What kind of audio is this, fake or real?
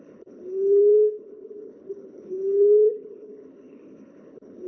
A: fake